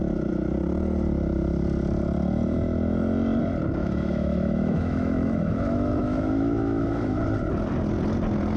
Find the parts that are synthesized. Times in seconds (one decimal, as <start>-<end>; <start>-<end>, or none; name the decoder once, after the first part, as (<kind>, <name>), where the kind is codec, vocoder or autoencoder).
3.8-7.2 (autoencoder, DAC-VAE)

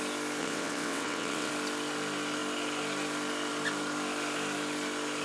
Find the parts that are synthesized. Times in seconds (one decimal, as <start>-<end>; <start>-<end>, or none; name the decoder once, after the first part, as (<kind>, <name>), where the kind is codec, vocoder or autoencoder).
0.4-1.5 (vocoder, WaveNeXt)

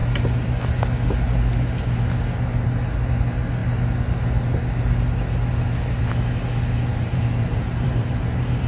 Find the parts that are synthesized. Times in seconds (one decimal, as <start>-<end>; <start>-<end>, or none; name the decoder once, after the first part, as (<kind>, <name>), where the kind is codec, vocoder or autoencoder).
6.9-8.7 (vocoder, BigVGAN v2)

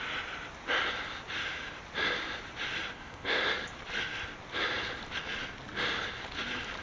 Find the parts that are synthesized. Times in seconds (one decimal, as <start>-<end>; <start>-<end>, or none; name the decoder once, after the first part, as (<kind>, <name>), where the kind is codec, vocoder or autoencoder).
2.9-3.4 (codec, ZipCodec)

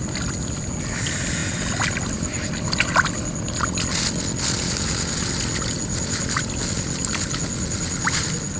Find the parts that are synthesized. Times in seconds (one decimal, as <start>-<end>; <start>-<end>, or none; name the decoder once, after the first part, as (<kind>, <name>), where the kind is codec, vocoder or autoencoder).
none

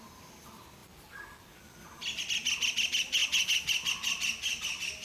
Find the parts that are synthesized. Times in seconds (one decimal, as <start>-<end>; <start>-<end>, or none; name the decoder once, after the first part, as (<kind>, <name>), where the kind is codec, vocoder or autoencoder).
none

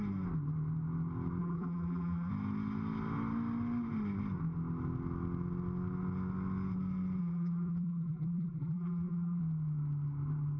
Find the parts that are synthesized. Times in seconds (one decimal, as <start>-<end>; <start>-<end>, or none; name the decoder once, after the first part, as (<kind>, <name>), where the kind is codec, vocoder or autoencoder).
1.4-2.3 (vocoder, BigVGAN v2); 7.2-9.4